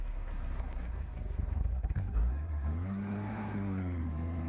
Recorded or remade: remade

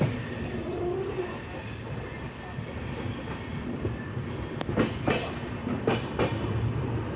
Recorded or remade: recorded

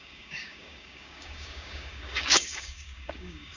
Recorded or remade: remade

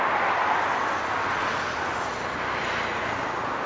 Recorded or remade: recorded